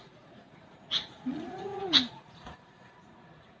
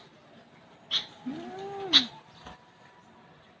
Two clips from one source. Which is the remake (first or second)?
first